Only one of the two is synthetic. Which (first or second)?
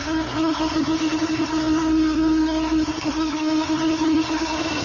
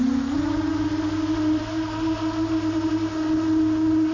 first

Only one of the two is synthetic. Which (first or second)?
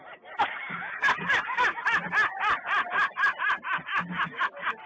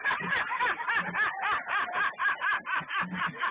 second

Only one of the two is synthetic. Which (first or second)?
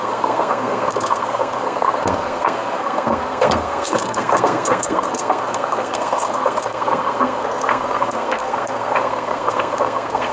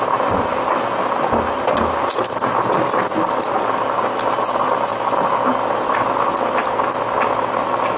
first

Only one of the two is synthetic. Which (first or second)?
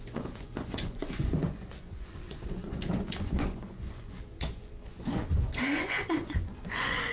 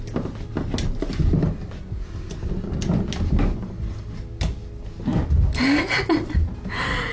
first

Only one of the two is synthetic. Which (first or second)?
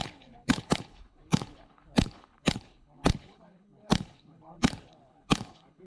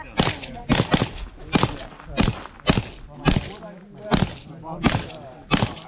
first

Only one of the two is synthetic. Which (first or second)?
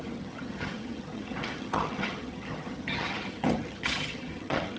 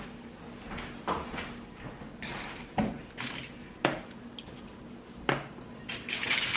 first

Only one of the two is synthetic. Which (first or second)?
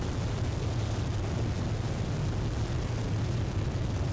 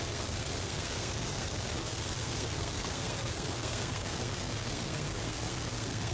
second